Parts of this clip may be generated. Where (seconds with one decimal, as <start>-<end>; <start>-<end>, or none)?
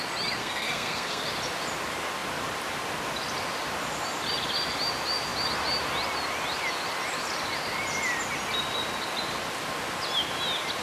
0.4-1.2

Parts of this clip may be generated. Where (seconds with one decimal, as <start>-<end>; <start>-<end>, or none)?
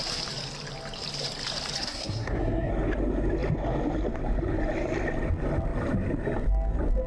1.8-2.7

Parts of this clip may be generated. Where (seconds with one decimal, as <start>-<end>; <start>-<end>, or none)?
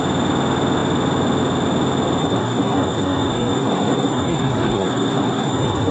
2.2-5.9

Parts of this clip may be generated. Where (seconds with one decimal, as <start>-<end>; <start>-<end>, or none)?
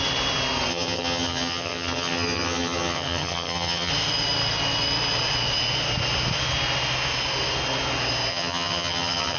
0.7-3.9; 8.3-9.4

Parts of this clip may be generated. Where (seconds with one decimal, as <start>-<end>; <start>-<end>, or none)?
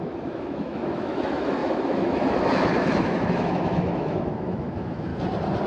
0.0-5.1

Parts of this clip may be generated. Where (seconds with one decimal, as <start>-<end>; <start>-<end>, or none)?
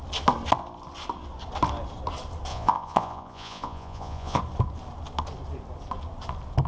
2.5-4.4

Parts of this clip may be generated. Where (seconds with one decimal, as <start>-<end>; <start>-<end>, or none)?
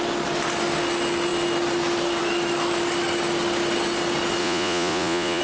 4.4-5.4